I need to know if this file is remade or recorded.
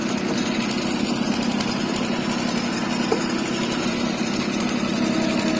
recorded